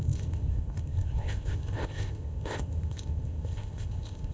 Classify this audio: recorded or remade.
remade